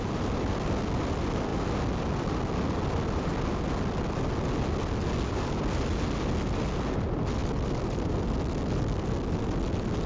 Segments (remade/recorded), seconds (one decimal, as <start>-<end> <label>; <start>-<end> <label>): 0.0-7.4 recorded; 7.4-8.3 remade; 8.3-10.1 recorded